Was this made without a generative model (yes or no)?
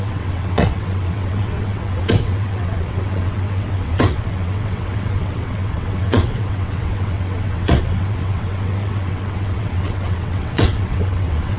no